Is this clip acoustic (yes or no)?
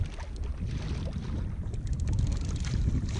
yes